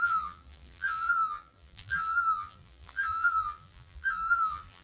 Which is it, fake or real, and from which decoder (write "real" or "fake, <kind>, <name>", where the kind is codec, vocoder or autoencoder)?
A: fake, vocoder, BigVGAN v2